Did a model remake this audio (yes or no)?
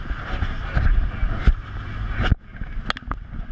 no